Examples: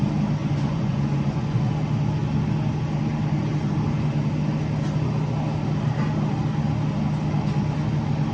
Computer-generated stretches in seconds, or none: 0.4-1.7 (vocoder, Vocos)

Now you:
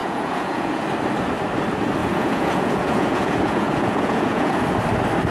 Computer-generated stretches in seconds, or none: 0.0-0.8 (vocoder, Vocos); 2.0-4.6

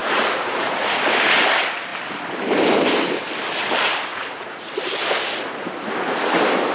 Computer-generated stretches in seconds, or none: 0.0-1.0 (vocoder, Vocos); 4.1-4.8

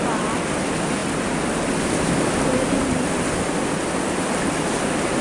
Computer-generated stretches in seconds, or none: none

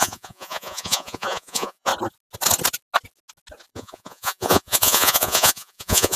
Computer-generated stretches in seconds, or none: 0.0-1.9 (vocoder, Vocos); 3.7-6.2

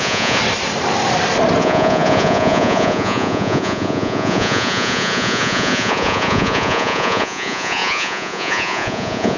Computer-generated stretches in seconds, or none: 0.0-0.4 (vocoder, Vocos); 1.6-9.4

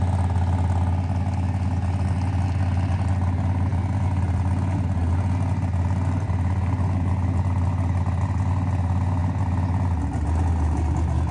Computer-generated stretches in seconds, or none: none